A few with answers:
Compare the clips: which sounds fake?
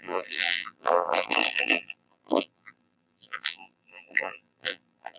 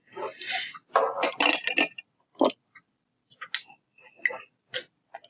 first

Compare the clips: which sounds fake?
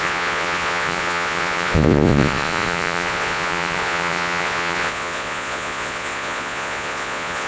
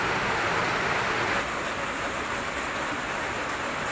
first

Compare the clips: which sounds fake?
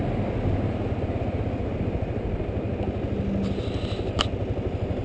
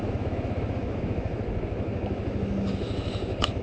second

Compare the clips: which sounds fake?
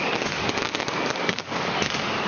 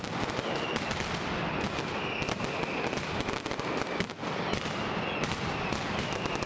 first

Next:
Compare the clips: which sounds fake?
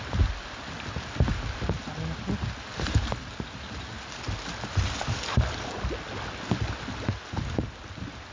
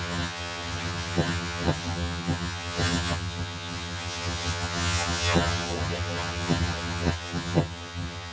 second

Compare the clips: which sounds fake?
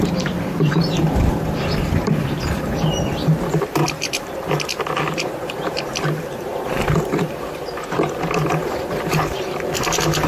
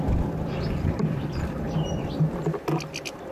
first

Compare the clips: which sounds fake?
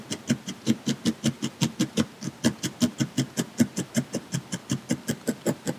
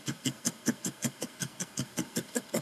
second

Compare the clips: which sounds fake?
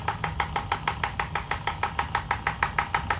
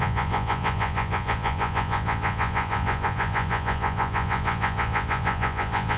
second